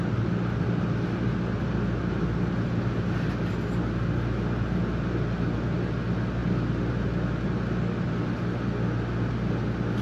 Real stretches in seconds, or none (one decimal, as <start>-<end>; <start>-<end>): 0.0-10.0